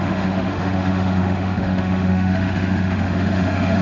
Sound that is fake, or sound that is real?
fake